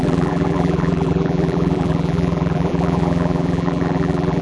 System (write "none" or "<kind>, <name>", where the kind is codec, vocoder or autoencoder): vocoder, BigVGAN v2